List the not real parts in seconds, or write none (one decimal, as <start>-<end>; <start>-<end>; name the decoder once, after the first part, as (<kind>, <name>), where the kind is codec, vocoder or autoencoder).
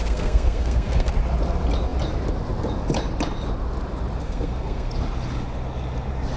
0.0-1.1 (codec, SNAC); 4.2-4.9